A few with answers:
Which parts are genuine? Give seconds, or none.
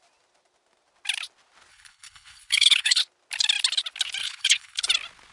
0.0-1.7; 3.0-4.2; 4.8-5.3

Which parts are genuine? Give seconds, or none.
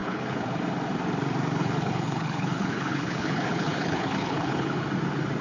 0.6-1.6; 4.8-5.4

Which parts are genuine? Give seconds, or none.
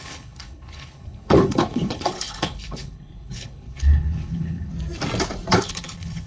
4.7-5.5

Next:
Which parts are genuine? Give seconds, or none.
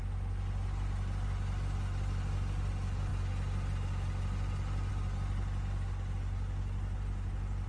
0.0-7.7